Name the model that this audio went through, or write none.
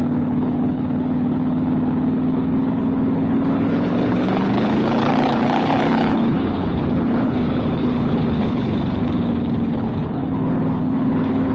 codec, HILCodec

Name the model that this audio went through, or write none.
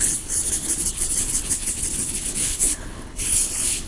codec, HILCodec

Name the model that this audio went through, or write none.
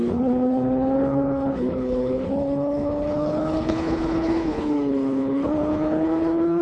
codec, HILCodec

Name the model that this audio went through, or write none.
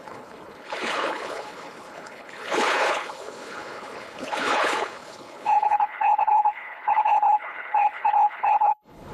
codec, HILCodec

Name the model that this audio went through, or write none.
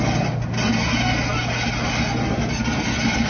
none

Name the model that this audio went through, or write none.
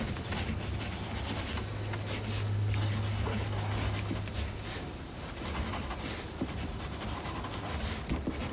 none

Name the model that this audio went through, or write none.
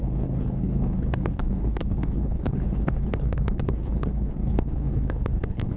codec, HILCodec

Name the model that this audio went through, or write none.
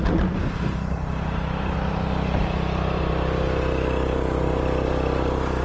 none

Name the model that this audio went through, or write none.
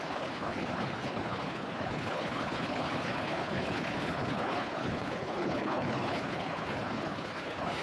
codec, HILCodec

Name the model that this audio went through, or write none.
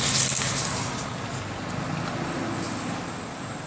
none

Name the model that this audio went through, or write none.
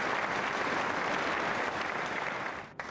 none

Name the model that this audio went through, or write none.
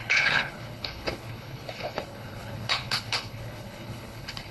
codec, HILCodec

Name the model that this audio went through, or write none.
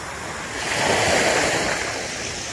none